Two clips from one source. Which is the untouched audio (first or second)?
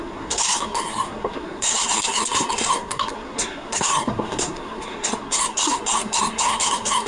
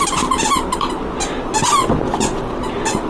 second